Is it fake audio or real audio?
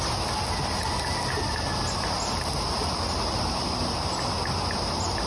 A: real